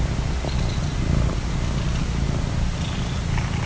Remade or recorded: recorded